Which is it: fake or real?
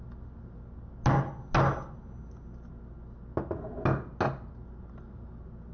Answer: real